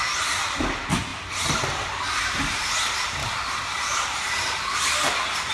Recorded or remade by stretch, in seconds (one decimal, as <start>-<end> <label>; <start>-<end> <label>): 0.0-5.5 recorded